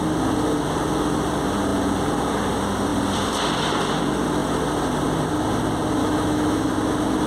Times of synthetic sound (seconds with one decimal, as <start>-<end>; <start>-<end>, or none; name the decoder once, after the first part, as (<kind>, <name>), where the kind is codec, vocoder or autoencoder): 6.0-6.7 (autoencoder, DAC-VAE)